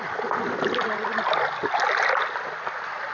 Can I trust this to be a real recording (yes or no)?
yes